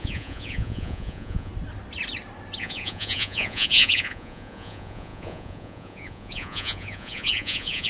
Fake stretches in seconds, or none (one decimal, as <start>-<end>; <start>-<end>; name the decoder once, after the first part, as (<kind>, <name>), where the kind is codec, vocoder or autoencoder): 0.0-1.5 (vocoder, Vocos); 2.6-7.9

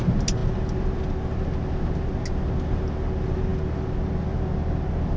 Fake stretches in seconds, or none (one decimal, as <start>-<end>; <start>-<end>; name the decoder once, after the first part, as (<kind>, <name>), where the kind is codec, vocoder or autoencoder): none